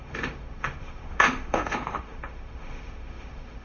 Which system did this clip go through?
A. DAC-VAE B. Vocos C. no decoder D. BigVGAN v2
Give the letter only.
A